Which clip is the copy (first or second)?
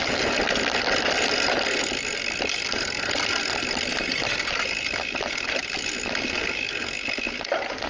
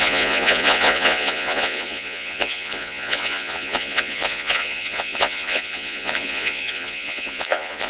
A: second